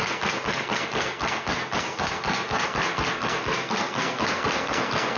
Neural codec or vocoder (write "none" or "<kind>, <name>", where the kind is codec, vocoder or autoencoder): codec, SNAC